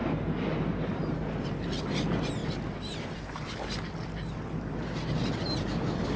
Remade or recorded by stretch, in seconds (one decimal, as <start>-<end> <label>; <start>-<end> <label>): 0.0-6.2 recorded